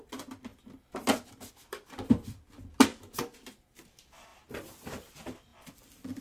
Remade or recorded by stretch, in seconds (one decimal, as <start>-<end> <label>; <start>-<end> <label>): 0.0-0.5 remade; 0.5-1.5 recorded; 1.5-2.9 remade; 2.9-3.8 recorded; 3.8-6.2 remade